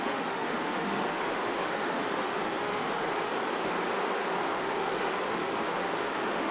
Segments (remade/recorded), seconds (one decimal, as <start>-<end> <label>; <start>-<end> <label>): 0.0-3.3 remade; 3.3-4.4 recorded; 4.4-6.5 remade